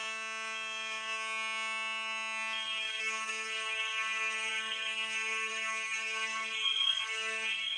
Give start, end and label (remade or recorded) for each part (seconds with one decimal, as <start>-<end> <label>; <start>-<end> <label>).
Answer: 0.0-3.0 recorded; 3.0-7.8 remade